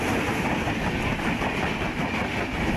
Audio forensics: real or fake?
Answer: real